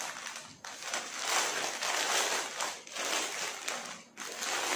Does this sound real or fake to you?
real